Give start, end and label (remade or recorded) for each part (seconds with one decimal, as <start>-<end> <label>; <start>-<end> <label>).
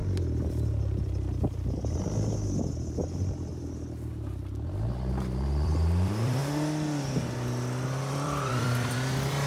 0.0-5.1 recorded; 5.1-6.4 remade; 6.4-8.1 recorded; 8.1-9.5 remade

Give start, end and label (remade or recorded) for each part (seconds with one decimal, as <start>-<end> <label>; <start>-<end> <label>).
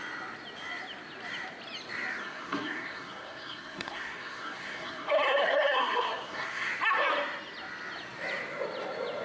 0.0-2.2 recorded; 2.2-6.7 remade; 6.7-9.2 recorded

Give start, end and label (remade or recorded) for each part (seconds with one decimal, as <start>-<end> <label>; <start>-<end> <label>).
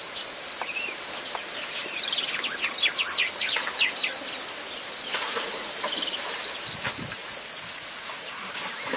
0.0-5.1 recorded; 5.1-5.7 remade; 5.7-7.2 recorded; 7.2-8.3 remade; 8.3-9.0 recorded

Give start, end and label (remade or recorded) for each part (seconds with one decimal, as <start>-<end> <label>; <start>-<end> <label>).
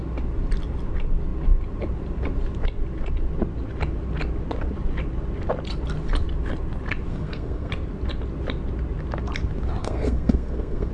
0.0-7.1 recorded; 7.1-7.7 remade; 7.7-9.8 recorded; 9.8-10.9 remade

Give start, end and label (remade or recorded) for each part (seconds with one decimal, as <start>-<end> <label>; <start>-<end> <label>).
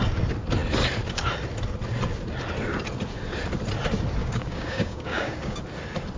0.0-4.2 recorded; 4.2-5.6 remade; 5.6-6.2 recorded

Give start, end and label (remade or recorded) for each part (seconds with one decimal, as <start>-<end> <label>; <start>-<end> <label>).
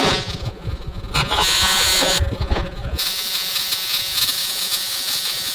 0.0-5.5 remade